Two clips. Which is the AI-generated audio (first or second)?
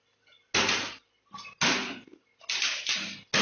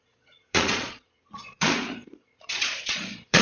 second